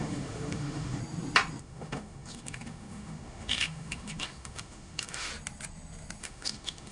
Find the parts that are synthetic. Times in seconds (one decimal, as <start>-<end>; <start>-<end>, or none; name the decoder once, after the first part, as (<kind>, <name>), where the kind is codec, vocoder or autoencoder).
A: 0.0-1.0 (autoencoder, DAC-VAE); 1.6-5.3; 6.2-6.9